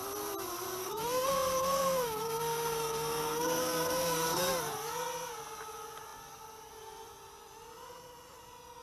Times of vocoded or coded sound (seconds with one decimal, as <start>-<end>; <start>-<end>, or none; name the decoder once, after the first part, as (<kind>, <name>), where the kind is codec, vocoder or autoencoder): 0.8-4.4 (codec, SNAC)